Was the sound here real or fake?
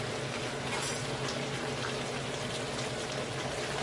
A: real